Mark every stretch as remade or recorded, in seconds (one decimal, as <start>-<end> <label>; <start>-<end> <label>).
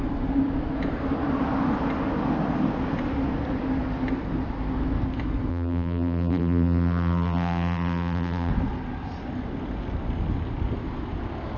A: 0.0-5.5 recorded; 5.5-8.5 remade; 8.5-11.6 recorded